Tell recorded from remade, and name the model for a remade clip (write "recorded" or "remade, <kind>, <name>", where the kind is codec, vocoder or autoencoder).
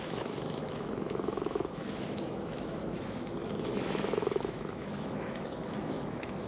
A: remade, autoencoder, DAC-VAE